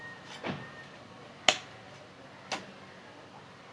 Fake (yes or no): no